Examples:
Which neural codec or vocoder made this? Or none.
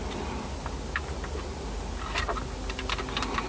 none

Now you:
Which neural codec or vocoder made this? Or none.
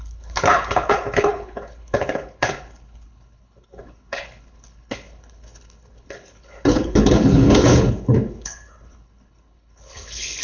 codec, HILCodec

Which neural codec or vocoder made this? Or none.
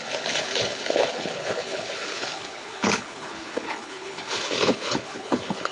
codec, HILCodec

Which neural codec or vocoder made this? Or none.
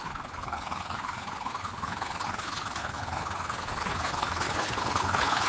codec, HILCodec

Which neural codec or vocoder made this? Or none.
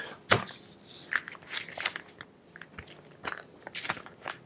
none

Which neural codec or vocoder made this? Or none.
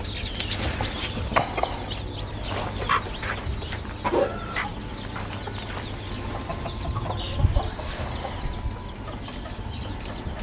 none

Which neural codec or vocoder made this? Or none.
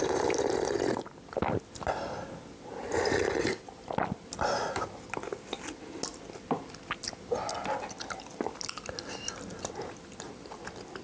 none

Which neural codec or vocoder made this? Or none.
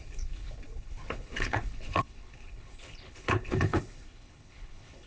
codec, HILCodec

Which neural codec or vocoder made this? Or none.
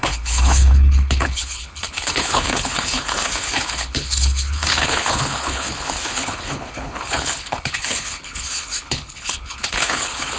codec, HILCodec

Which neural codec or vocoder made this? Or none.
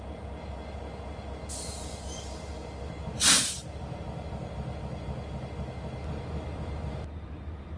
none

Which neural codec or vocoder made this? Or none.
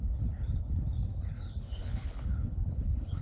codec, HILCodec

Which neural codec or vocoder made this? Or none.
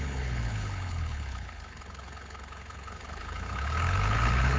codec, HILCodec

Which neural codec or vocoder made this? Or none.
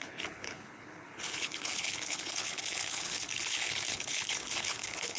codec, HILCodec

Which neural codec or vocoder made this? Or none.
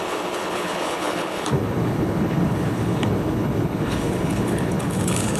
codec, HILCodec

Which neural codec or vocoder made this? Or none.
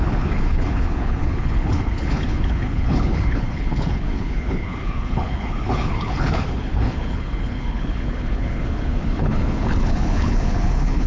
codec, HILCodec